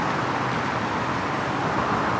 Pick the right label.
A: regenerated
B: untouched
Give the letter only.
B